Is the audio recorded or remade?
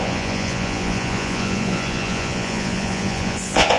remade